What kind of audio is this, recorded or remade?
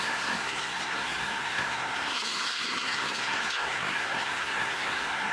remade